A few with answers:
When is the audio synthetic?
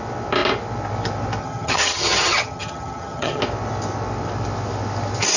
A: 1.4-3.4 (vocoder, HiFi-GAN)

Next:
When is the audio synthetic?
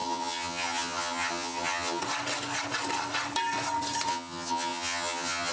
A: 0.0-2.0 (vocoder, HiFi-GAN); 4.1-5.5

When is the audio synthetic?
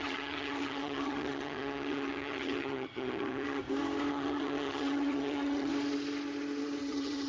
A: 0.0-3.6 (vocoder, HiFi-GAN); 4.1-5.7; 6.8-7.3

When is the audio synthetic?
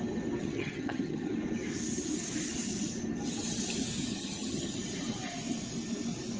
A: 0.4-1.3 (vocoder, HiFi-GAN); 4.1-4.7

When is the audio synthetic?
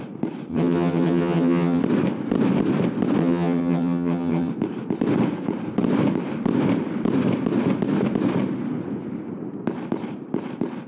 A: 0.5-1.8 (vocoder, HiFi-GAN); 3.2-4.5